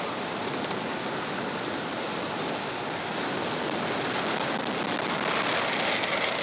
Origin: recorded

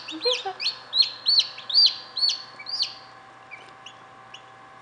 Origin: recorded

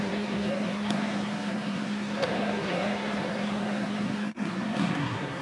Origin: remade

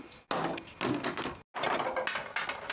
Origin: recorded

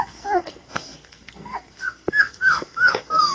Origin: remade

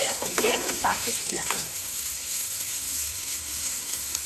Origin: remade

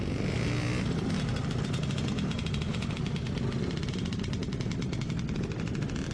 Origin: recorded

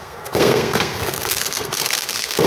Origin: remade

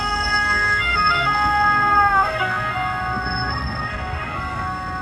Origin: remade